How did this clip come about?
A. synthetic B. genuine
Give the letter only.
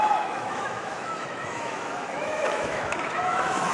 A